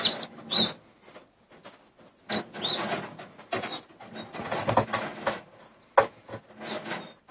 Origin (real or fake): real